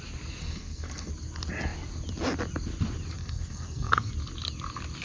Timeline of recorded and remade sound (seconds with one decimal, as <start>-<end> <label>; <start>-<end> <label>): 0.0-0.4 recorded; 0.4-1.1 remade; 1.1-3.2 recorded; 3.2-4.1 remade; 4.1-5.0 recorded